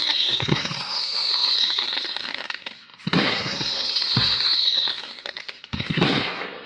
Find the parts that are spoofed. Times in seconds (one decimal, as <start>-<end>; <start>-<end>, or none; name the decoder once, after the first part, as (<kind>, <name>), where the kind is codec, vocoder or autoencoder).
0.0-6.7 (codec, SNAC)

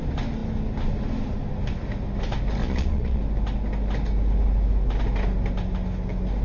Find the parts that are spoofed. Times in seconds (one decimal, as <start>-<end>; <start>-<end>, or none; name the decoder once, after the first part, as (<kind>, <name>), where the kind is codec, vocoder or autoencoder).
2.6-3.2 (vocoder, Vocos)

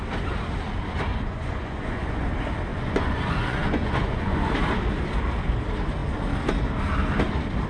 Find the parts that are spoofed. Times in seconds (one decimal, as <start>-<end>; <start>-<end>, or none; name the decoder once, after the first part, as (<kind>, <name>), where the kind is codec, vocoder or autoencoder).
1.1-2.3 (vocoder, Vocos); 2.7-4.5

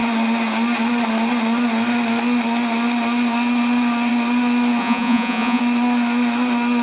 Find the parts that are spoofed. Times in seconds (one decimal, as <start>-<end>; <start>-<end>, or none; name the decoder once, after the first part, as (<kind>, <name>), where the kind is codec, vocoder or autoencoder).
4.8-5.6 (vocoder, Vocos)

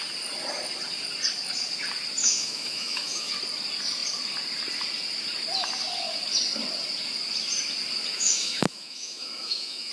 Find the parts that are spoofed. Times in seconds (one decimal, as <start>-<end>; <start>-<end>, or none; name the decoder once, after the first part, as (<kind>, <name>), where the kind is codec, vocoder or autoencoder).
2.2-3.3 (autoencoder, DAC-VAE); 8.1-9.9